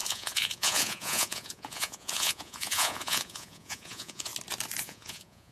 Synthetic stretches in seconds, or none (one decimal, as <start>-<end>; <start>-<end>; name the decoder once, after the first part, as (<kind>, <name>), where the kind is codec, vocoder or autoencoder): 0.0-4.3 (vocoder, Vocos); 4.8-5.5